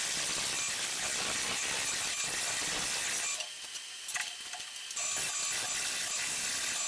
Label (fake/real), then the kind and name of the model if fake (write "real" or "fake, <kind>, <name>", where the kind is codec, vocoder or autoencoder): real